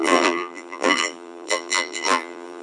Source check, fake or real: fake